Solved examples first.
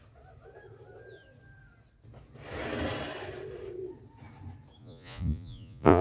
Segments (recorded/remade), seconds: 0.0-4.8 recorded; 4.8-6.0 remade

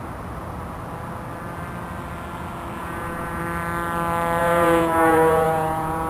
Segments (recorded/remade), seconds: 0.0-2.8 recorded; 2.8-3.4 remade; 3.4-4.4 recorded; 4.4-6.1 remade

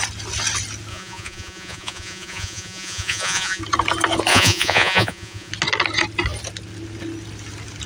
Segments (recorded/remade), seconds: 0.0-0.9 recorded; 0.9-3.6 remade; 3.6-4.3 recorded; 4.3-5.5 remade; 5.5-7.9 recorded

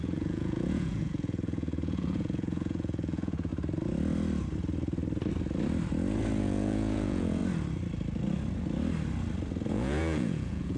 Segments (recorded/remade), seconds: 0.0-3.5 remade; 3.5-6.4 recorded; 6.4-7.4 remade; 7.4-9.7 recorded; 9.7-10.8 remade